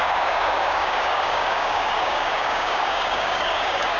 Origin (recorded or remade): remade